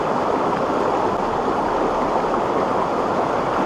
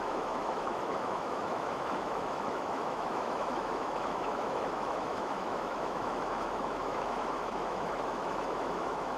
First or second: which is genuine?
first